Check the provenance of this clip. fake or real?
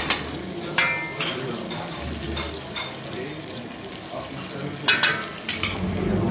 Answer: real